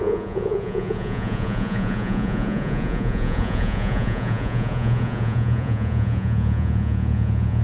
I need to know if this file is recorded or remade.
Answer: remade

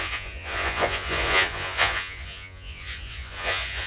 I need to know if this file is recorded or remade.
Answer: remade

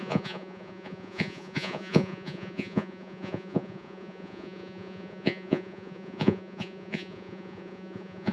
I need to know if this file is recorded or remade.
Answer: remade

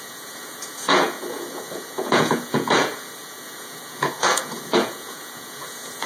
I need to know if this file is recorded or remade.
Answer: remade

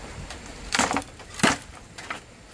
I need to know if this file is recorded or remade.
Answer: recorded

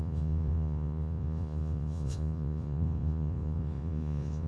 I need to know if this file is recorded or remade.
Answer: remade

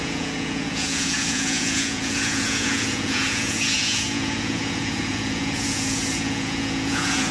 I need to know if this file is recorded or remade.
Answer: remade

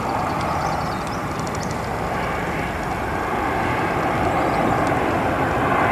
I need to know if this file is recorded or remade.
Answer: recorded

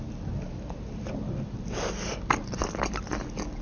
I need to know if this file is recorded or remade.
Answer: recorded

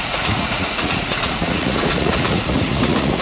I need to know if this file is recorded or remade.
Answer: remade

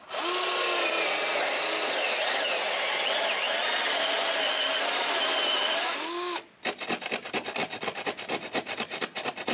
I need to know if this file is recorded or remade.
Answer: recorded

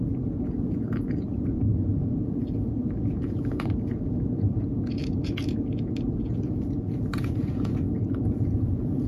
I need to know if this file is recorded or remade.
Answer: remade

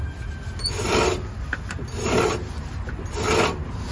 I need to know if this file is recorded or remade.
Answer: recorded